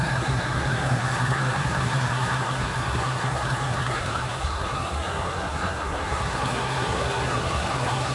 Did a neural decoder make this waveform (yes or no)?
yes